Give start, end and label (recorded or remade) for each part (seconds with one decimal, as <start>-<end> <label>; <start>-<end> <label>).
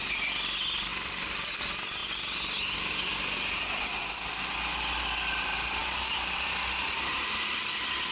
0.0-8.1 recorded